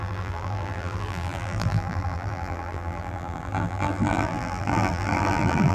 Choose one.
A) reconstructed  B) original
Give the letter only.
A